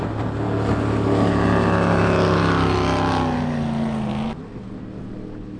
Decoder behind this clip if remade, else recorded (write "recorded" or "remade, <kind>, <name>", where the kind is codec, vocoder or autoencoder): recorded